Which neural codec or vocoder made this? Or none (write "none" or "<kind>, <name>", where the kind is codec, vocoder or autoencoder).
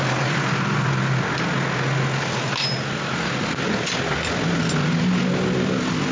none